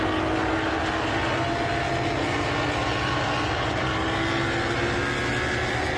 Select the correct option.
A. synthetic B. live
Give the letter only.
B